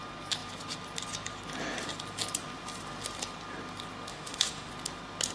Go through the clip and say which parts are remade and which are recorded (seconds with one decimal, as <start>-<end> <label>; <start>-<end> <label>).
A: 0.0-4.1 recorded; 4.1-4.7 remade; 4.7-5.3 recorded